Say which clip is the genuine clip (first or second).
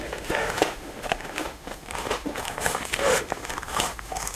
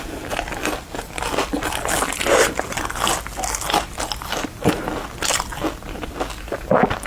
second